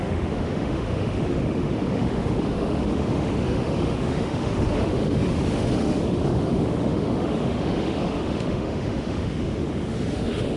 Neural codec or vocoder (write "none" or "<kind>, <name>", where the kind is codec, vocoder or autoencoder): autoencoder, DAC-VAE